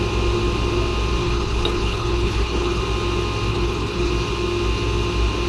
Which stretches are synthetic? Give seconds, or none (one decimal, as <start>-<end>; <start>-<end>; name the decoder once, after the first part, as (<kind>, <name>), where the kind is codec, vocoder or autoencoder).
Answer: 1.2-2.8 (codec, HILCodec); 3.5-4.1